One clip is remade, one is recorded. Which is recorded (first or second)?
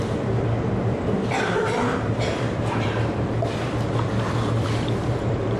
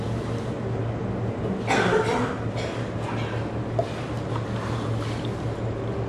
second